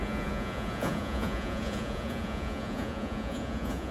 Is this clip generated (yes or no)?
yes